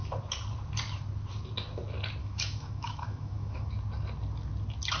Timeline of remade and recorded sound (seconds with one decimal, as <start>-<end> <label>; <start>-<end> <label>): 0.0-2.2 recorded; 2.2-3.7 remade; 3.7-5.0 recorded